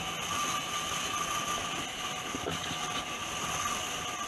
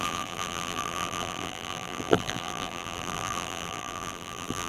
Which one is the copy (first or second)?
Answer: second